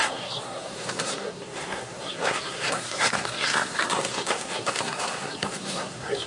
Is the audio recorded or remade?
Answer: remade